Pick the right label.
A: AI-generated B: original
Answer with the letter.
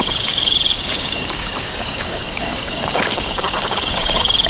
A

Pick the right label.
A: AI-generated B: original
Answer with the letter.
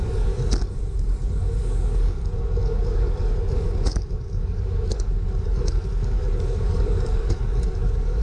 A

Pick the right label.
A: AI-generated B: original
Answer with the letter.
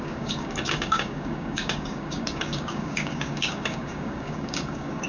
A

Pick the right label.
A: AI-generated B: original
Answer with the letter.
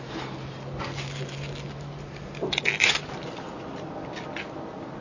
B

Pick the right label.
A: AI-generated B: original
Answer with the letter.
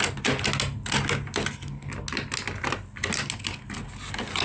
B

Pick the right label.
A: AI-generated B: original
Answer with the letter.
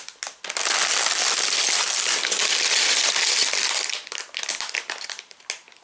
B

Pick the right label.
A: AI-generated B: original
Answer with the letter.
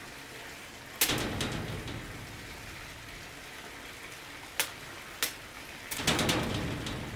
B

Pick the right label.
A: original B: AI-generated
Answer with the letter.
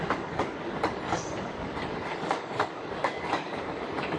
B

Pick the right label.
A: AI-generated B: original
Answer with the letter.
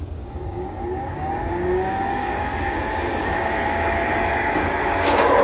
A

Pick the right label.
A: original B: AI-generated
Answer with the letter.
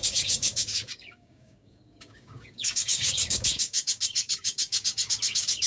B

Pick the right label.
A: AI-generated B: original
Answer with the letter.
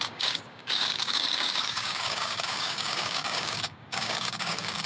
A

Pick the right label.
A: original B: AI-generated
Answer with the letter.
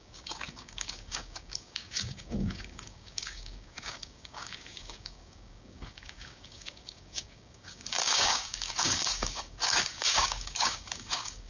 B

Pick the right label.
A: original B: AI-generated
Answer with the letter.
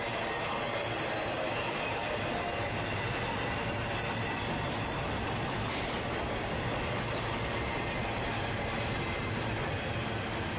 A